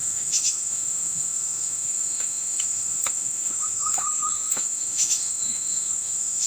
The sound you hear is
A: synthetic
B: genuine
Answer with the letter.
A